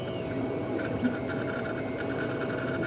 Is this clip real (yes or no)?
yes